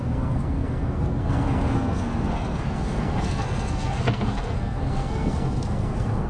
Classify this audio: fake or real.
fake